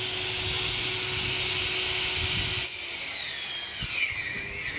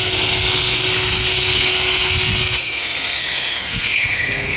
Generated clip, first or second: second